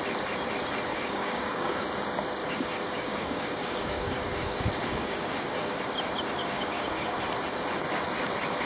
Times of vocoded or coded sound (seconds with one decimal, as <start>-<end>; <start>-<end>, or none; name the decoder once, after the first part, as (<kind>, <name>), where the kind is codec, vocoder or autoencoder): 0.9-1.8 (codec, DAC); 2.4-5.8; 6.4-7.1